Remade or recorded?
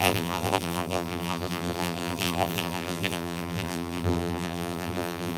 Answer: remade